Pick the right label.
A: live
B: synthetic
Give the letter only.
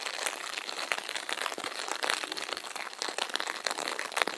B